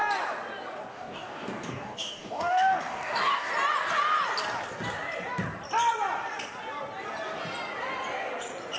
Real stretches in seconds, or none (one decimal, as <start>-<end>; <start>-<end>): 0.0-0.9; 3.5-8.8